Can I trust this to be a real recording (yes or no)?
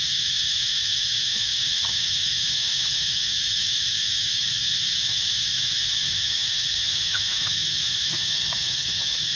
no